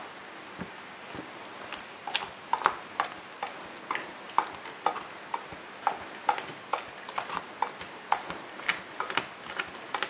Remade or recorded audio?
recorded